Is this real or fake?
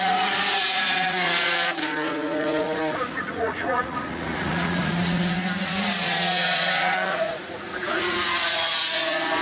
fake